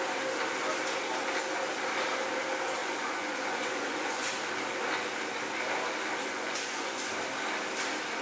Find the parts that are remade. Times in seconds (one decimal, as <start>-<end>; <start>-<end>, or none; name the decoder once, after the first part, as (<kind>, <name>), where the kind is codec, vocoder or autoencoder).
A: 2.8-4.3 (vocoder, Vocos); 6.3-7.0

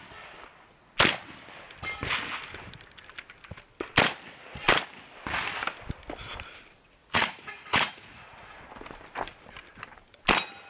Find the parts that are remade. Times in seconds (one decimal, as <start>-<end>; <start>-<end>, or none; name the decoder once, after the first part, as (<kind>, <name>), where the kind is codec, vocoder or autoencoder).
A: 7.0-8.5 (vocoder, Vocos)

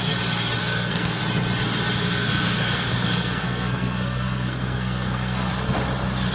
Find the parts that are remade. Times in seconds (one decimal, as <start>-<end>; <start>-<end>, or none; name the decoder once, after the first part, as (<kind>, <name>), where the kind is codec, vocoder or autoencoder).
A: 0.6-1.2 (codec, SNAC); 2.0-5.5

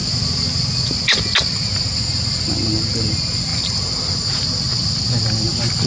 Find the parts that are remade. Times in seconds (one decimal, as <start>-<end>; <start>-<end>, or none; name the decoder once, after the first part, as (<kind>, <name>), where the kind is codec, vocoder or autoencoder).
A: none

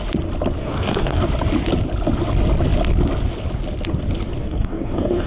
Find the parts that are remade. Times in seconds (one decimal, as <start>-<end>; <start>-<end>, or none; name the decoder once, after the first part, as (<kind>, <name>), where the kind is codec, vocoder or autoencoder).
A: 0.6-1.2 (codec, DAC); 4.4-5.3

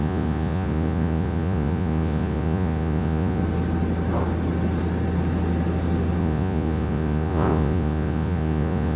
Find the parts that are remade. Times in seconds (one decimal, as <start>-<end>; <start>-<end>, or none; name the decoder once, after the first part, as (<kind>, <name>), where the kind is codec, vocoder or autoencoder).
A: 0.0-3.4 (vocoder, Vocos); 6.2-9.0

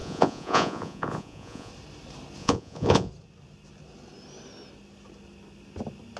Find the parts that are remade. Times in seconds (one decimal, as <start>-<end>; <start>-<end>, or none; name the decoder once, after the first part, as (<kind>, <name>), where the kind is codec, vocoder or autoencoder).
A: 0.0-1.7 (vocoder, Vocos); 2.4-3.1

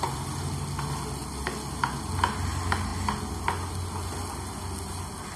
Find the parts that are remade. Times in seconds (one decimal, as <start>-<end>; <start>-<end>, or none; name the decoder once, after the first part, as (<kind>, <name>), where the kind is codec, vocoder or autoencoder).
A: none